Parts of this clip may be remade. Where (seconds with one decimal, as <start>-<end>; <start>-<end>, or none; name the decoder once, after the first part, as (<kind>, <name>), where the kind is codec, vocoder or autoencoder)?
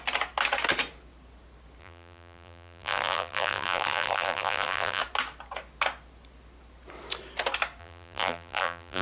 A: 1.8-5.0 (vocoder, BigVGAN v2); 7.8-9.0